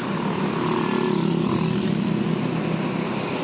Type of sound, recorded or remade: recorded